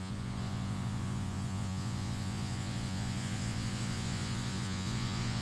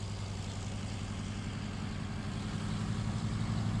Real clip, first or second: second